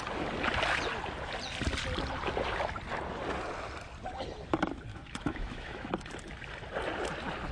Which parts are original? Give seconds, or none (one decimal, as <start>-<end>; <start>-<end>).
0.0-4.9; 5.9-7.5